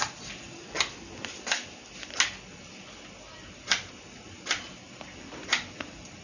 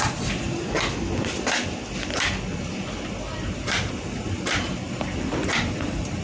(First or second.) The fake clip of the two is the second